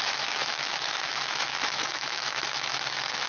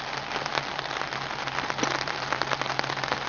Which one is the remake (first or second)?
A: first